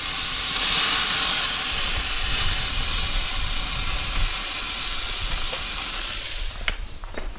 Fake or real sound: real